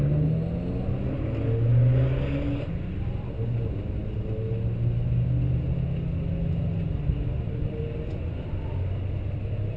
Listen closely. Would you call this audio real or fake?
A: real